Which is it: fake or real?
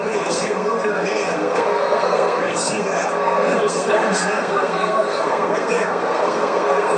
fake